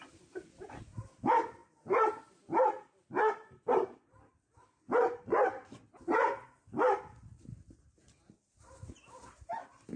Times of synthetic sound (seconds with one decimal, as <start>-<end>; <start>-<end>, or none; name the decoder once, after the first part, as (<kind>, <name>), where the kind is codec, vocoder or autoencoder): none